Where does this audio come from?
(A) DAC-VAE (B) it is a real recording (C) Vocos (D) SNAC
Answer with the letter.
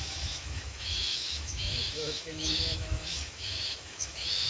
A